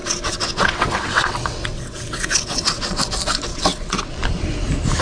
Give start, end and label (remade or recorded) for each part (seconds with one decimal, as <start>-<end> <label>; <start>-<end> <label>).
0.0-3.0 remade; 3.0-3.5 recorded; 3.5-4.1 remade; 4.1-5.0 recorded